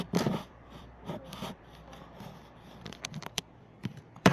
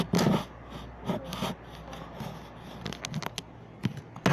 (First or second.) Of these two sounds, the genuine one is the second